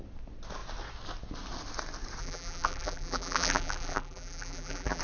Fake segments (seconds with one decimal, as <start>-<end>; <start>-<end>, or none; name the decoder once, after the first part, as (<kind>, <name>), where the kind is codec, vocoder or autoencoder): 2.2-5.0 (vocoder, BigVGAN v2)